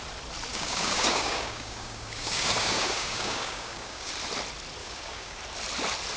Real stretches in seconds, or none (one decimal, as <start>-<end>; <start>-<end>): 0.0-0.5; 4.1-4.8; 5.4-6.2